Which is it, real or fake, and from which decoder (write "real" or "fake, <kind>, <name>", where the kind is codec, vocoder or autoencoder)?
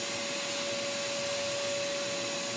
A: real